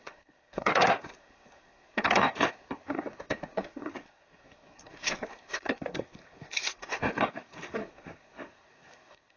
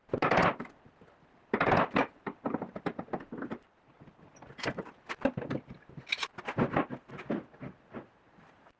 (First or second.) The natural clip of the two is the second